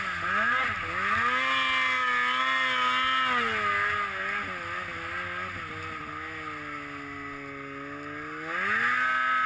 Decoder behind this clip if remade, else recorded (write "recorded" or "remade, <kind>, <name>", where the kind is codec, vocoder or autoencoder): recorded